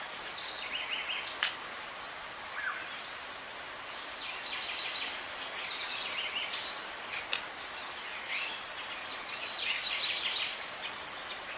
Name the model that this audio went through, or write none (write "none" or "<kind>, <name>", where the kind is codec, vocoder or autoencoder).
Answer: none